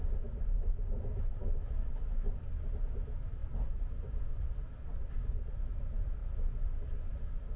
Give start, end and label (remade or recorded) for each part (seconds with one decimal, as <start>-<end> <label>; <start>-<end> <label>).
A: 0.0-7.6 recorded